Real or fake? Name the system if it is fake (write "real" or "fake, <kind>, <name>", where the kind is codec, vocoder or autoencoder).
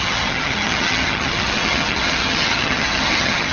fake, vocoder, HiFi-GAN